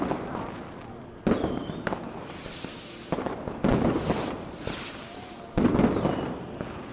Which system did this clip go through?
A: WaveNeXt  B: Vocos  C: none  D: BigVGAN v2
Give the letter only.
C